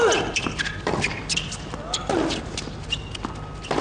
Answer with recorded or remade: recorded